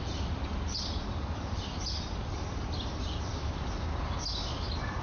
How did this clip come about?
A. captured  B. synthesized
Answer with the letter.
A